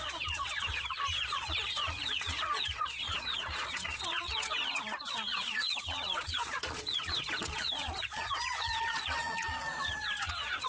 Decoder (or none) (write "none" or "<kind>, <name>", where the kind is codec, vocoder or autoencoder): vocoder, Vocos